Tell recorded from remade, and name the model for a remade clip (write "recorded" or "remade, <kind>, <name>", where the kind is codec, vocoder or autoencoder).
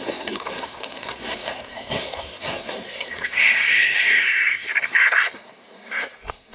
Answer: remade, codec, SNAC